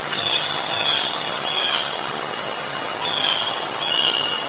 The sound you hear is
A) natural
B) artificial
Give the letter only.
B